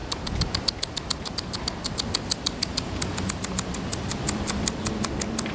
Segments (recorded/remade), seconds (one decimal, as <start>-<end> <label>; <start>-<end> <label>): 0.0-3.3 remade; 3.3-3.9 recorded; 3.9-4.8 remade; 4.8-5.5 recorded